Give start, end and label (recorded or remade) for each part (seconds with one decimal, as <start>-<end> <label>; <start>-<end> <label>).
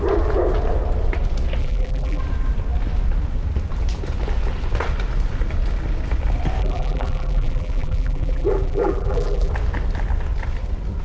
0.0-1.6 recorded; 1.6-2.2 remade; 2.2-6.6 recorded; 6.6-9.5 remade; 9.5-11.0 recorded